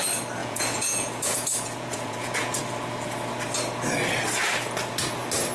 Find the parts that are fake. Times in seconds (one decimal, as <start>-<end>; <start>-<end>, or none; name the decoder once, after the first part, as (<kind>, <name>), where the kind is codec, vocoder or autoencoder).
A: 0.4-2.6 (vocoder, Vocos)